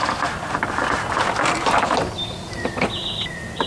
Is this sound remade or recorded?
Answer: recorded